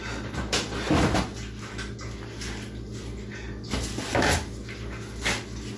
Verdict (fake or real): real